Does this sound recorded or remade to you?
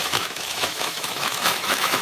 remade